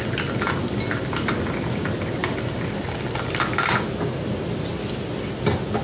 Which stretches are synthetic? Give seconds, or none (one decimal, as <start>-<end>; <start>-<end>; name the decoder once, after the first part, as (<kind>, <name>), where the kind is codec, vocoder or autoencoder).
none